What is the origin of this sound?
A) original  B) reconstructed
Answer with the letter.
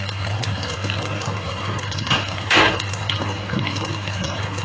B